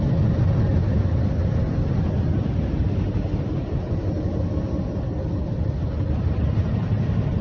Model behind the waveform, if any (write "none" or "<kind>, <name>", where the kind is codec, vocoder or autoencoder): none